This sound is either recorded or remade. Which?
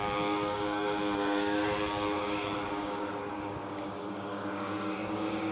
remade